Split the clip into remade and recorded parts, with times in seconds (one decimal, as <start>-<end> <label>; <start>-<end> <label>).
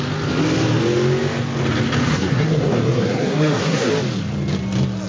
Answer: 0.0-2.1 recorded; 2.1-3.9 remade; 3.9-5.1 recorded